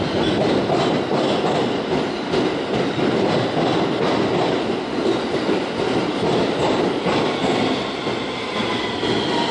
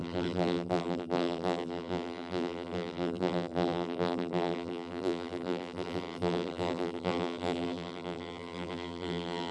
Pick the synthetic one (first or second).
second